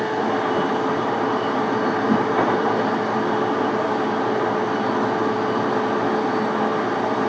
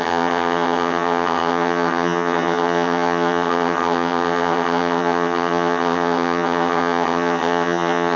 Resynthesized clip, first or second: second